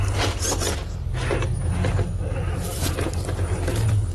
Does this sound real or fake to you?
real